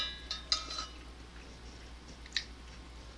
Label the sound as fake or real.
real